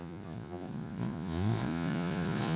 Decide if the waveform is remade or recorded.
remade